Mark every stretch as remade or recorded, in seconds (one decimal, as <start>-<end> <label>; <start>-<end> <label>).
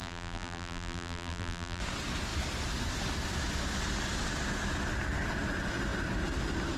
0.0-1.8 remade; 1.8-6.8 recorded